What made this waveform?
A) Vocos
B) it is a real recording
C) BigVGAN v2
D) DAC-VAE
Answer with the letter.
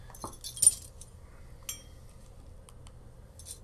B